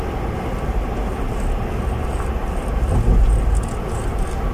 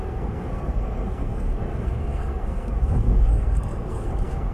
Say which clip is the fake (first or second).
second